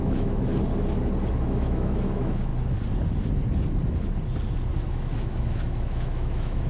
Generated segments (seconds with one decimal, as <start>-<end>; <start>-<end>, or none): 0.0-0.5; 1.3-2.5; 4.8-6.7